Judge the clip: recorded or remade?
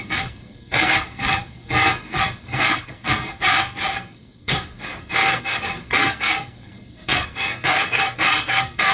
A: remade